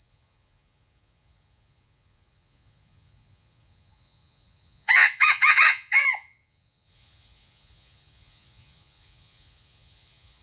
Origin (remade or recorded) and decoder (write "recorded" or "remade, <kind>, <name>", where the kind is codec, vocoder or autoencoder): remade, vocoder, Vocos